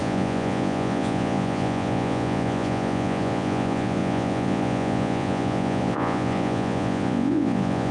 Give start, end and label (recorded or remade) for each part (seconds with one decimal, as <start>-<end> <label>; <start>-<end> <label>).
0.0-7.9 remade